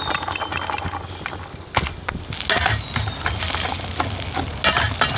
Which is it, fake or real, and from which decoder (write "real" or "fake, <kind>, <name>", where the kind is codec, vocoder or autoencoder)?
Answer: real